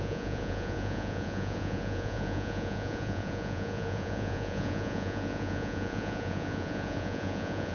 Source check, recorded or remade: remade